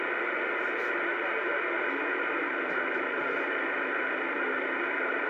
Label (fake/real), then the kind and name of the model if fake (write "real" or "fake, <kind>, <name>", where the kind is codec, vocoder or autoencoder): real